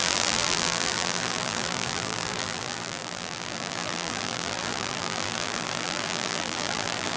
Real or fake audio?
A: fake